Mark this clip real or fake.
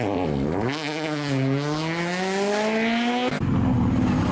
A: real